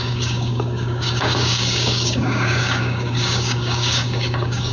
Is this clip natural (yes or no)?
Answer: no